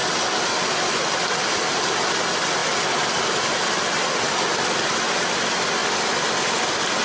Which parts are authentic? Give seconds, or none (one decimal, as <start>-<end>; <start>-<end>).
0.0-7.0